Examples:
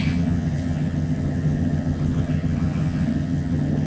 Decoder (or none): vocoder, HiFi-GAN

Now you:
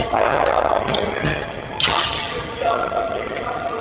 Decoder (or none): vocoder, HiFi-GAN